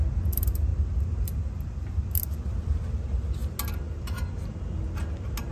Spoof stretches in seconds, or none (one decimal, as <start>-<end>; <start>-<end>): none